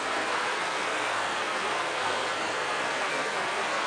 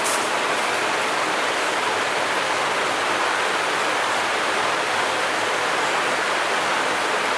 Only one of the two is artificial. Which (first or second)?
first